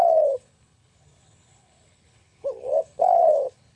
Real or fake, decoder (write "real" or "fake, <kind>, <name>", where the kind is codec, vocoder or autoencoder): fake, codec, HILCodec